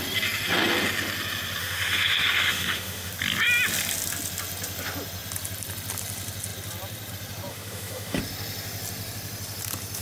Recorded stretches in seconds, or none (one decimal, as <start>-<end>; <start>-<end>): 0.0-1.6; 3.1-7.5; 8.2-10.0